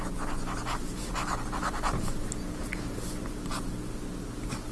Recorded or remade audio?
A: recorded